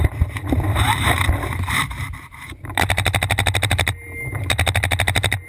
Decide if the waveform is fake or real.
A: fake